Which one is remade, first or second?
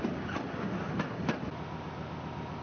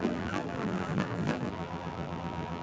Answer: second